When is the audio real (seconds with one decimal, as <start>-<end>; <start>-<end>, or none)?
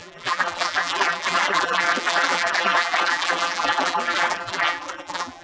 none